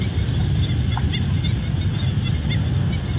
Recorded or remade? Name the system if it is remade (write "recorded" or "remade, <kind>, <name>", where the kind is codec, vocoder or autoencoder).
recorded